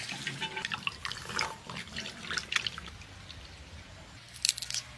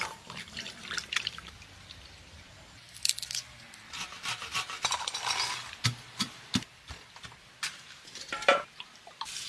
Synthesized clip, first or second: second